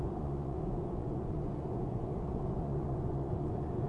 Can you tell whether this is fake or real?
fake